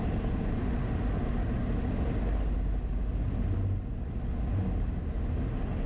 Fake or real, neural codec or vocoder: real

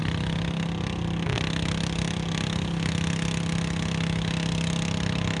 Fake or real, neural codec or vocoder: real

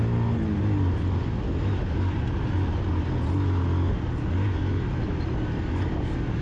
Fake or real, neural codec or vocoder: real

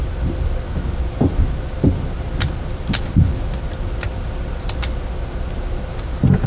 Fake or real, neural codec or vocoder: real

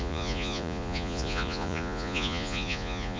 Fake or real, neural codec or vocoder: fake, vocoder, Vocos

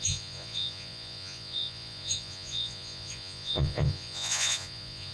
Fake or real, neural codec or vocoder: fake, vocoder, Vocos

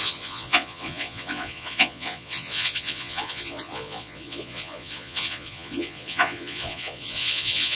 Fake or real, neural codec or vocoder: fake, vocoder, Vocos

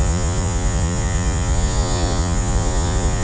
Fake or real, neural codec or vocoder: fake, vocoder, Vocos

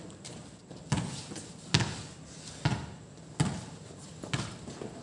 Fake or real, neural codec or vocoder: real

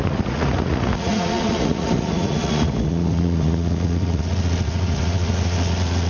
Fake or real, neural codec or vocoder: fake, vocoder, Vocos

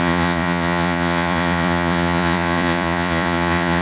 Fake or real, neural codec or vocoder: fake, vocoder, Vocos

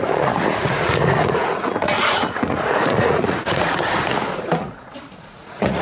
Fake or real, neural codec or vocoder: fake, vocoder, Vocos